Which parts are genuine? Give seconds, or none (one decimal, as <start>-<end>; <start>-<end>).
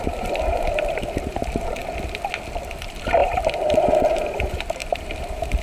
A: 1.8-2.6